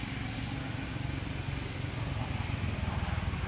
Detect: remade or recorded recorded